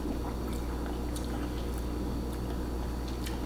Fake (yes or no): no